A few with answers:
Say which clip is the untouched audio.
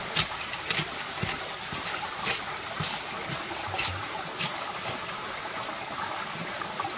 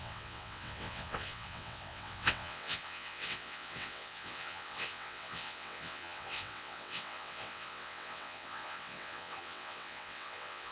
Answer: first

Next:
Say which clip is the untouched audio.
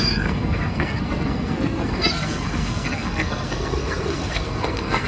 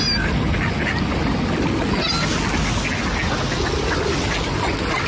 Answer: second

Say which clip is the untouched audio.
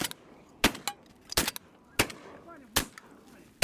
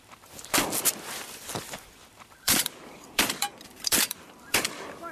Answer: first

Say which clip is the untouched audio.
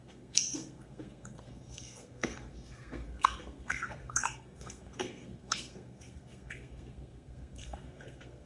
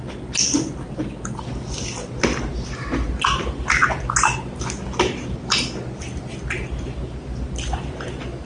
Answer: second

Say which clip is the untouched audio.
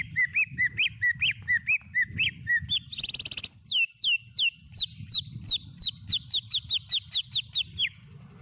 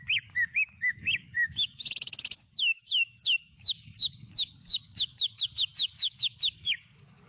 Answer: first